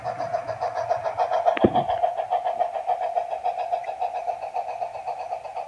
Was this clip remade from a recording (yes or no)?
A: no